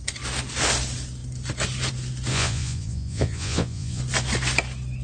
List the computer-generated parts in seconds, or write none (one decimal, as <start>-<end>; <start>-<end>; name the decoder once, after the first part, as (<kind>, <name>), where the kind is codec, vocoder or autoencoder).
2.3-4.0 (vocoder, Vocos)